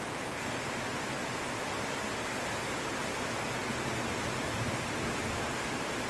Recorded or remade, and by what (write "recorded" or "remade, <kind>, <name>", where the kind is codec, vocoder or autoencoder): recorded